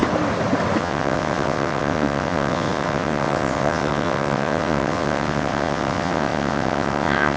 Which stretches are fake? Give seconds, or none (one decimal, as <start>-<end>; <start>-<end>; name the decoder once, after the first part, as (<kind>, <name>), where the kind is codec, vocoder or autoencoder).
0.8-7.4 (vocoder, WaveNeXt)